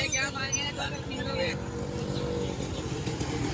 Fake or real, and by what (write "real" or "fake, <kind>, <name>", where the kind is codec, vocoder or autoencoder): fake, vocoder, BigVGAN v2